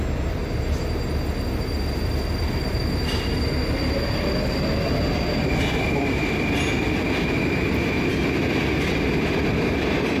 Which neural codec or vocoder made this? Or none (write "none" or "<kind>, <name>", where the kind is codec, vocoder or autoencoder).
none